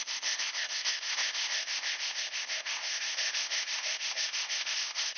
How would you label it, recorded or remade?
remade